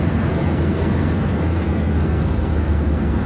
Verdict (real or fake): fake